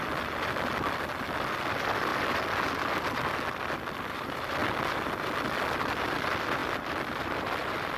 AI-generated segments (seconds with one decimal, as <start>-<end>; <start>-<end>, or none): none